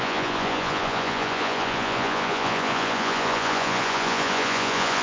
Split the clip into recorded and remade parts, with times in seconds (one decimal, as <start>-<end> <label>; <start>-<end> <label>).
0.0-5.0 remade